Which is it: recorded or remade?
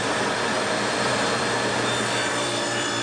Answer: remade